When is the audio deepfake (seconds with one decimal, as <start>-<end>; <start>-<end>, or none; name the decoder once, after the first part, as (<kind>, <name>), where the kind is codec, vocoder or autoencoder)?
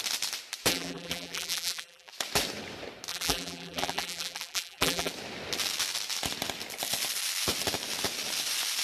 0.7-2.1 (vocoder, BigVGAN v2); 3.1-5.1